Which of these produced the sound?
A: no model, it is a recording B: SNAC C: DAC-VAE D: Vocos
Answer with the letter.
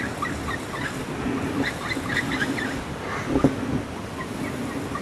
A